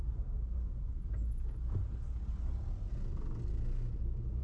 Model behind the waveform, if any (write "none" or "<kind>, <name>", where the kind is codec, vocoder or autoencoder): none